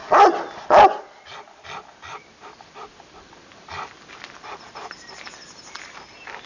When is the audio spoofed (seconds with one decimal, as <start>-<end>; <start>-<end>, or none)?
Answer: none